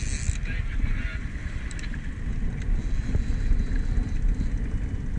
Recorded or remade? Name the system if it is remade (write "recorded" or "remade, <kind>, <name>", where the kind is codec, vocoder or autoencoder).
recorded